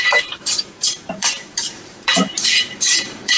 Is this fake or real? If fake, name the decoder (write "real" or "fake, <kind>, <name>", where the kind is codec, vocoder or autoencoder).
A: fake, vocoder, BigVGAN v2